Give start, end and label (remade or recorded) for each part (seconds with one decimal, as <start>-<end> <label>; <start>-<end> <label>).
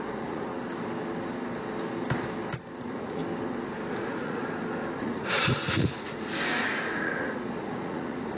0.0-0.5 remade; 0.5-2.8 recorded; 2.8-3.2 remade; 3.2-3.9 recorded; 3.9-4.4 remade; 4.4-5.0 recorded; 5.0-8.4 remade